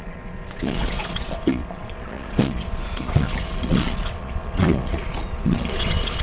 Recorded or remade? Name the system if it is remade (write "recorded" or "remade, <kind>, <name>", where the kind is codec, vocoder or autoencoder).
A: remade, vocoder, Vocos